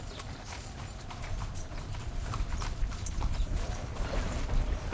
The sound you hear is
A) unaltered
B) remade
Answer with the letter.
B